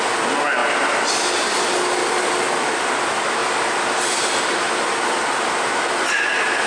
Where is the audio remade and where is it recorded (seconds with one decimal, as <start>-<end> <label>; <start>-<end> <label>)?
0.0-6.7 recorded